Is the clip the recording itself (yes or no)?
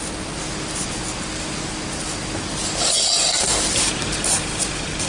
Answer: yes